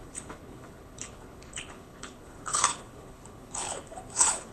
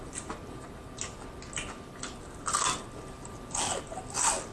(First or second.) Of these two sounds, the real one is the second